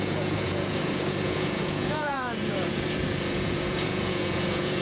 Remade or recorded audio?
remade